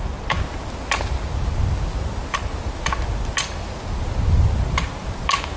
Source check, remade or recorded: recorded